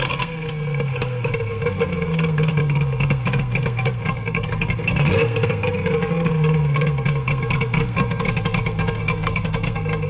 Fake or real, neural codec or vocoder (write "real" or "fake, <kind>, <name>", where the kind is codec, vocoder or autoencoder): fake, codec, SNAC